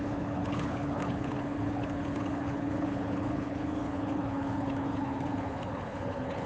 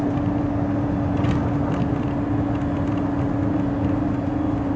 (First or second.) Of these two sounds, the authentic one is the second